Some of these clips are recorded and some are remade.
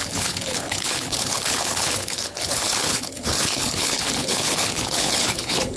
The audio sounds remade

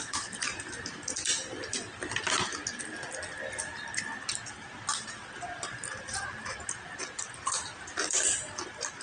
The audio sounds recorded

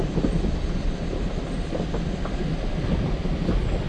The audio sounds recorded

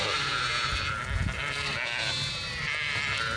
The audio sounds recorded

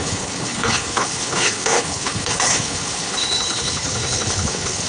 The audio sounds remade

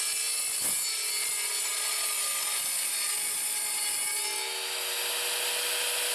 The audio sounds recorded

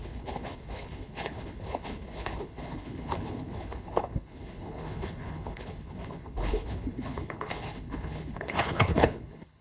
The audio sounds remade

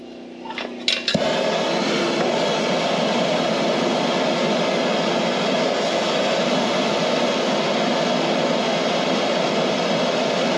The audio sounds recorded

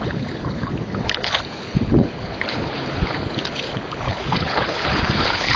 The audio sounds remade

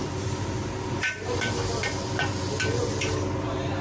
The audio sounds recorded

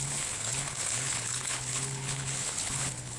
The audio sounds remade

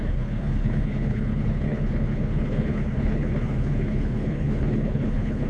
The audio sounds remade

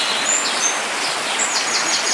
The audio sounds recorded